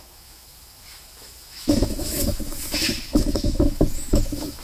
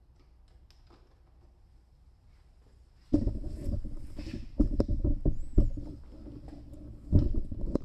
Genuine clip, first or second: second